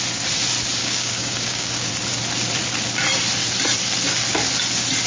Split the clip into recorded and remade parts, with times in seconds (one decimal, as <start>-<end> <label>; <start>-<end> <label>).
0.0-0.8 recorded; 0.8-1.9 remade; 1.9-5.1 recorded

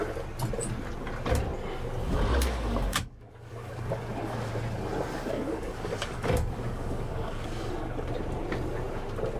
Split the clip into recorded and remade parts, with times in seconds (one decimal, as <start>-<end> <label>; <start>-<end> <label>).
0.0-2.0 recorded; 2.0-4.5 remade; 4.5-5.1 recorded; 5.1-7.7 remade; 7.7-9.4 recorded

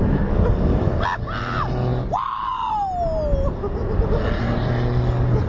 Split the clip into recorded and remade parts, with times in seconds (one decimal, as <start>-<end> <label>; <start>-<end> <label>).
0.0-5.5 recorded

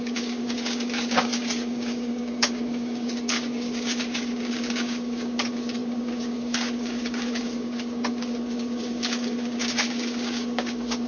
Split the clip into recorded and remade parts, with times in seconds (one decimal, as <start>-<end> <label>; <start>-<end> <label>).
0.0-11.1 remade

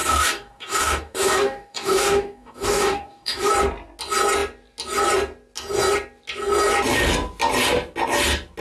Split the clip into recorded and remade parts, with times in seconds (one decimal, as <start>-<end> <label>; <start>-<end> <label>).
0.0-3.5 remade; 3.5-8.6 recorded